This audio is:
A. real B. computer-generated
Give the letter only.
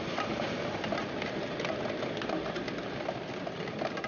B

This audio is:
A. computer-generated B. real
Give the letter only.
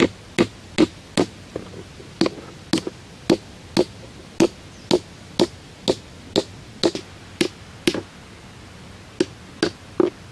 B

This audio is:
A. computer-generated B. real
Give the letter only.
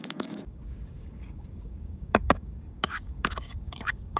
A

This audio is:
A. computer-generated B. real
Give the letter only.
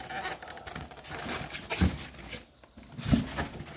B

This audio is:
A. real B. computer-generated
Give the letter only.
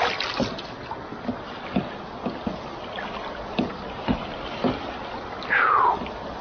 A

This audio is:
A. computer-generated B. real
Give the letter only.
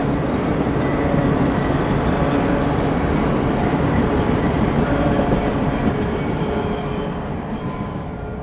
B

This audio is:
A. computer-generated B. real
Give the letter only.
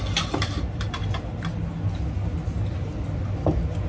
B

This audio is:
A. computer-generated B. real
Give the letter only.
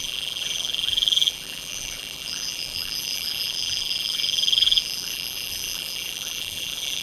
A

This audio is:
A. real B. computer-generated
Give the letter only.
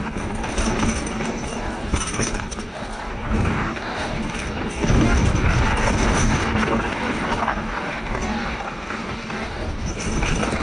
B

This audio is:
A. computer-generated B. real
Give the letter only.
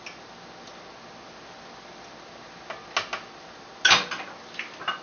B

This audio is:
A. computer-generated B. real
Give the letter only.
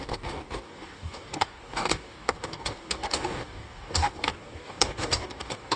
A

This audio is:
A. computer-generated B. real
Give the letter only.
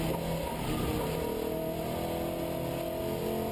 B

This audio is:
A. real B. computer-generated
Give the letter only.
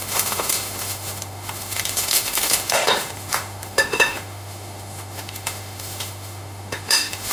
B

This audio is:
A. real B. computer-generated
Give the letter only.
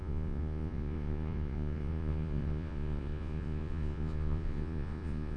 B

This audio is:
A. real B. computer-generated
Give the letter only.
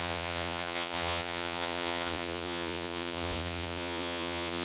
B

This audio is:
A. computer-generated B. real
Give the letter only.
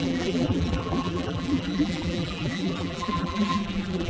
A